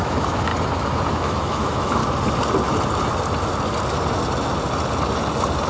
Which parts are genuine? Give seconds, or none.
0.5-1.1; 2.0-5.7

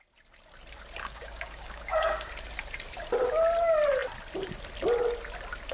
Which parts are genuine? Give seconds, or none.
0.0-1.0; 2.3-5.7

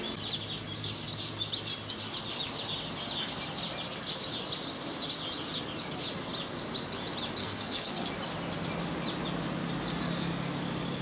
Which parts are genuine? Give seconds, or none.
0.0-7.4; 8.1-11.0

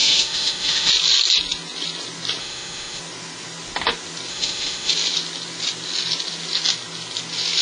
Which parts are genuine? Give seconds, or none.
0.9-2.4; 3.0-4.3; 4.9-7.6